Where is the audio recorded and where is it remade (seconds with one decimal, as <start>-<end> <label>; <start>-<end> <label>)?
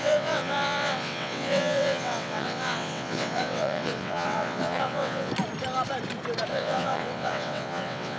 0.0-5.3 remade; 5.3-6.5 recorded; 6.5-8.2 remade